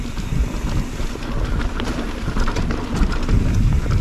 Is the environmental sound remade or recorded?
recorded